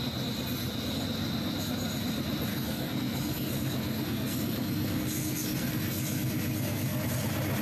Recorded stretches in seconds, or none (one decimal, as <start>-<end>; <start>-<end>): 0.0-2.5; 7.1-7.6

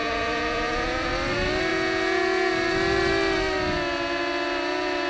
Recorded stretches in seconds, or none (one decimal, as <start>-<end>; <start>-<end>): 1.1-1.7; 2.5-5.1

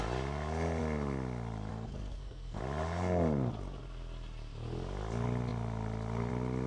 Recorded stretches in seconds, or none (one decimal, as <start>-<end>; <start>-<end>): 0.0-1.7; 2.6-6.7

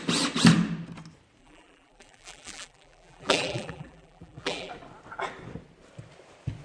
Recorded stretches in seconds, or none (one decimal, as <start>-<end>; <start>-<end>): 0.0-1.4; 4.7-6.6

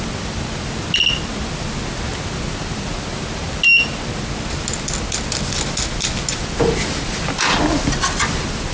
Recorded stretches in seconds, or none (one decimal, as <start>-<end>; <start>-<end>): 0.0-8.7

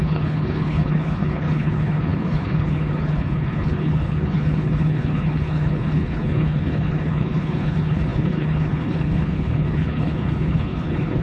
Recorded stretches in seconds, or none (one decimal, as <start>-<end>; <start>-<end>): none

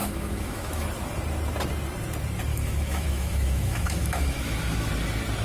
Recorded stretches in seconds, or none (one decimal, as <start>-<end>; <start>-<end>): 0.8-2.5; 4.9-5.4

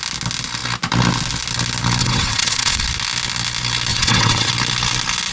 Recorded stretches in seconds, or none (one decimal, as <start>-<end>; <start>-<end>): 0.0-2.0; 2.8-3.9; 4.5-5.3